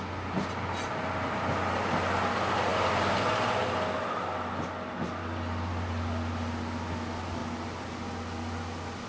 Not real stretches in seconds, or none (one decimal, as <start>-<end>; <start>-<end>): none